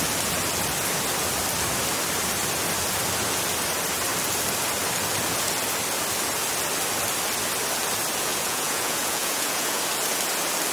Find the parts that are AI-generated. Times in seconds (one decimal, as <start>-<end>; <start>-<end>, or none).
8.3-9.8